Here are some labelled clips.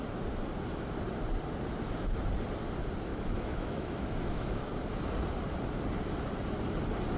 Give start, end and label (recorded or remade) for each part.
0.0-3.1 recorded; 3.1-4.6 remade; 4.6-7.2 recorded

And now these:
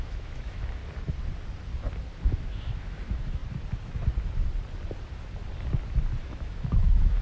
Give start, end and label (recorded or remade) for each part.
0.0-0.8 remade; 0.8-2.2 recorded; 2.2-3.4 remade; 3.4-6.2 recorded; 6.2-7.2 remade

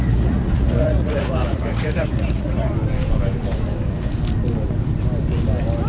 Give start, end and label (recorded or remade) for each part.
0.0-2.7 remade; 2.7-5.9 recorded

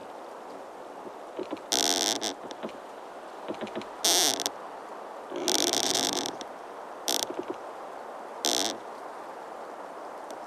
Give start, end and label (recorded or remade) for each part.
0.0-5.6 recorded; 5.6-7.3 remade; 7.3-10.5 recorded

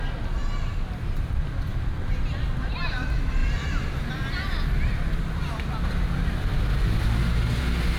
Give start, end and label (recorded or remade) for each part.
0.0-8.0 recorded